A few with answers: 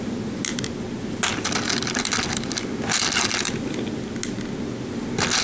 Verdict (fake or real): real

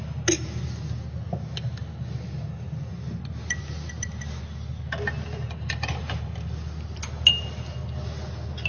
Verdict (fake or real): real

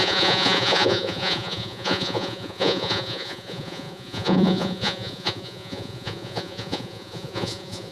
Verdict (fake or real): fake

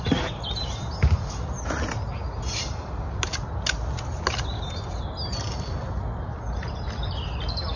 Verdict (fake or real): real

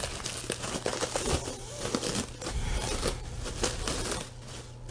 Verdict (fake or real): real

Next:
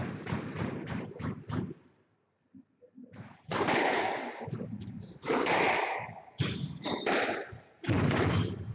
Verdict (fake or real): fake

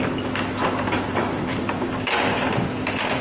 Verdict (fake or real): real